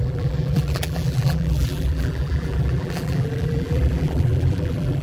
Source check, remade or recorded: remade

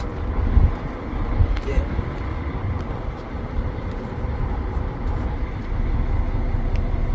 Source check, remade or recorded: recorded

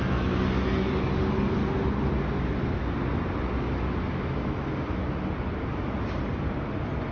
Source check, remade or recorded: recorded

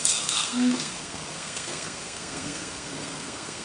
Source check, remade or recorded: remade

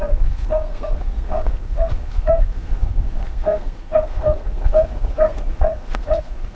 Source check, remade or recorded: remade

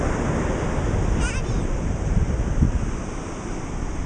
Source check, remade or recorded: recorded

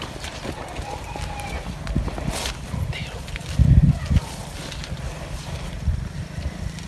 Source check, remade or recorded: recorded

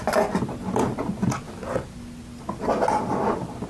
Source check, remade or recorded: recorded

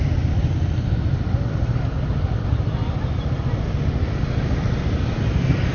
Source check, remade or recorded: recorded